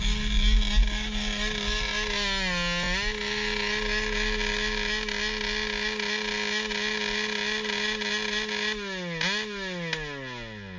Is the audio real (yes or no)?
yes